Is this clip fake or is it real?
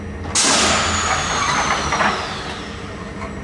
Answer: real